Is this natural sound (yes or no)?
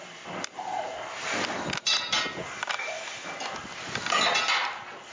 yes